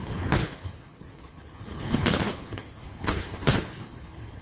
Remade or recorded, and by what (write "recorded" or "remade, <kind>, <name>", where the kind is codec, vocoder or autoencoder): remade, codec, HILCodec